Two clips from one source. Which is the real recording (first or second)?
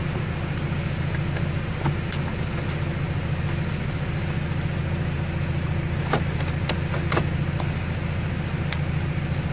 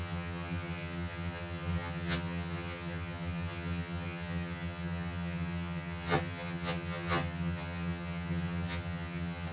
first